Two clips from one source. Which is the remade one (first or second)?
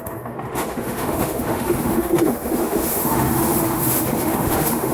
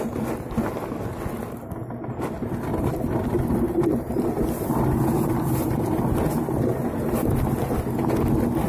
first